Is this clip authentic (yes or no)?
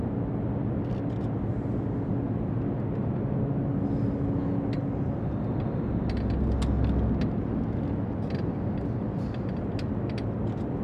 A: yes